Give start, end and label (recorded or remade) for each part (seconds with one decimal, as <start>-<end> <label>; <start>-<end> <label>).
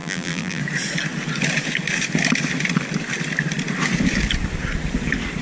0.0-0.6 remade; 0.6-5.4 recorded